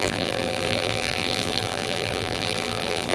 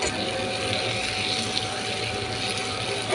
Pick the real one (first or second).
second